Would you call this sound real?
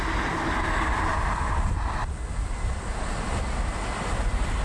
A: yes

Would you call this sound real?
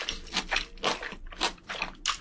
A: yes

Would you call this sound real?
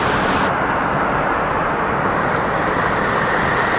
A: yes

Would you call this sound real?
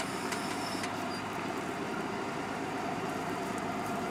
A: no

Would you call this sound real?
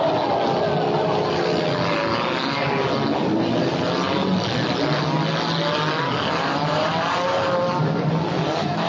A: yes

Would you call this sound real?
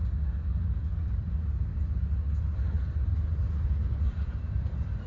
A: no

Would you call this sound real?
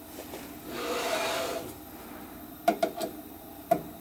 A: yes